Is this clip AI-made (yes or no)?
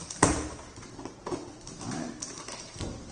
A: no